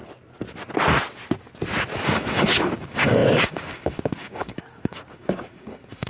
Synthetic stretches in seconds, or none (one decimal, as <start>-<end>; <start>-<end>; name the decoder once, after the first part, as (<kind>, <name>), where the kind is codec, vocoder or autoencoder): 2.0-6.1 (codec, DAC)